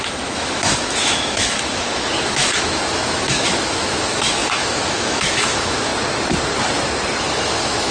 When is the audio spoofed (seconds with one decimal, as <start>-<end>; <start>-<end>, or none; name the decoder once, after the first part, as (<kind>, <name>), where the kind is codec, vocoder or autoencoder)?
0.0-5.9 (autoencoder, DAC-VAE); 7.2-7.9

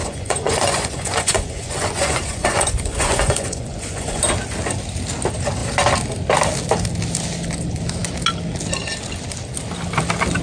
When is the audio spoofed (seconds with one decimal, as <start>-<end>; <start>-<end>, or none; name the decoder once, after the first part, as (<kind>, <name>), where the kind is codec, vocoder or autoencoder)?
0.0-4.2 (vocoder, Vocos)

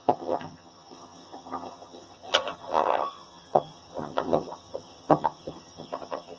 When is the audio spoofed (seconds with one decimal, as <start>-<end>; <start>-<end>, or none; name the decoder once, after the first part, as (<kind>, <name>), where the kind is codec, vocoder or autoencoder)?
0.0-6.4 (vocoder, HiFi-GAN)

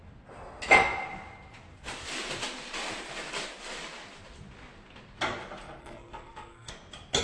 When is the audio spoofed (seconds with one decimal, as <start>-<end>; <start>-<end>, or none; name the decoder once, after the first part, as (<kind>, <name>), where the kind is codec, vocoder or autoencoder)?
5.8-6.7 (codec, SNAC)